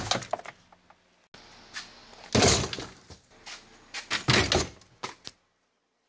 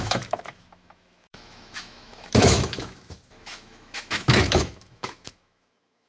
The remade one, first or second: second